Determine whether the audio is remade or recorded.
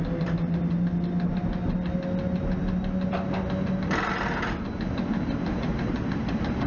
recorded